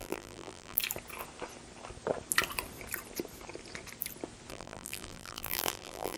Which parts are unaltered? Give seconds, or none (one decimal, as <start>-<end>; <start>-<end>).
0.8-4.5